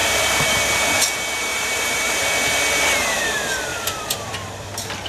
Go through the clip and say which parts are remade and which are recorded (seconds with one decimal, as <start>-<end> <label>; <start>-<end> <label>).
0.0-0.7 remade; 0.7-1.5 recorded; 1.5-2.2 remade; 2.2-3.7 recorded; 3.7-4.3 remade; 4.3-5.1 recorded